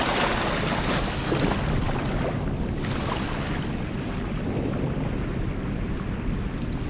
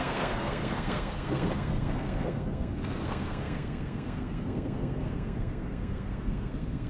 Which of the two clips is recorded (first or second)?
first